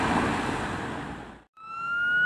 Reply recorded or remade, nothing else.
recorded